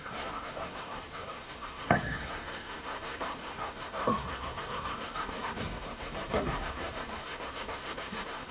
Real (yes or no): no